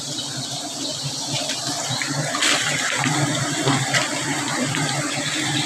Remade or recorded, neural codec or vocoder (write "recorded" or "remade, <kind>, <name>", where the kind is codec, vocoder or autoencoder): recorded